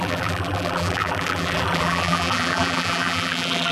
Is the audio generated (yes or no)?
yes